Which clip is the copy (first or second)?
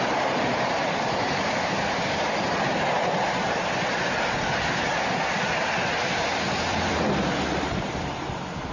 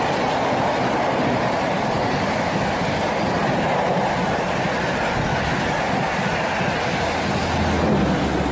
first